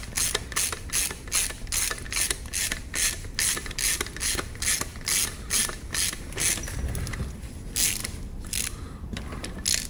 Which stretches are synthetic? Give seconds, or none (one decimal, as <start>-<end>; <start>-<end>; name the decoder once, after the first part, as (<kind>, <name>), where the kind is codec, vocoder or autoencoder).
none